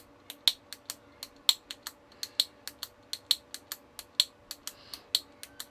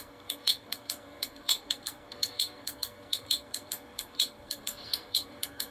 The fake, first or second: second